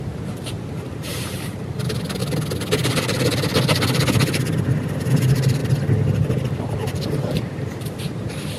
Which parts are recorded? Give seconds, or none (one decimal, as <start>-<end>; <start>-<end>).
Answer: 2.2-5.1; 5.6-6.6